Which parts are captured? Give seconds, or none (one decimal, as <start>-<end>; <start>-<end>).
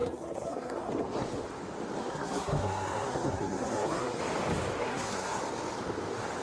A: 0.9-2.0; 4.2-4.8; 5.4-6.4